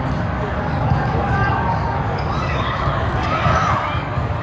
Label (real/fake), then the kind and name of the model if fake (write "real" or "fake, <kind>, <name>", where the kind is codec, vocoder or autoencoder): fake, codec, DAC